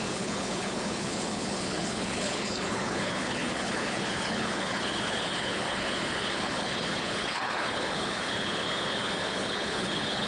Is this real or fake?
fake